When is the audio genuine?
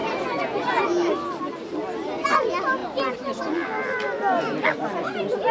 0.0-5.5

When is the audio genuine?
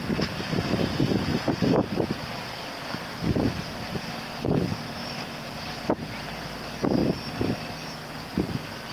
0.0-4.7; 5.2-8.9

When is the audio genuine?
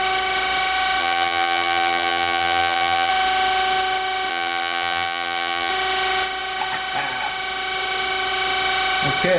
0.0-1.0; 3.1-4.3; 5.7-9.4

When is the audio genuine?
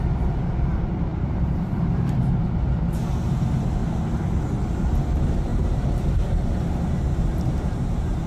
3.8-4.7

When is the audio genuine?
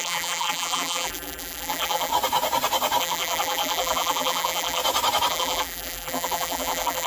2.1-3.0; 4.8-5.3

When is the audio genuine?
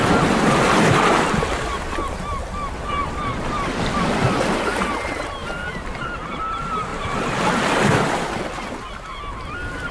0.0-3.0; 4.9-9.9